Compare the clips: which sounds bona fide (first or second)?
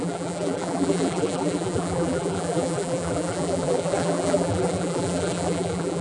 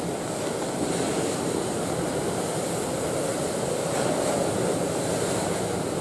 second